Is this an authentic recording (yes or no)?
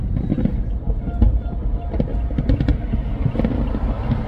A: yes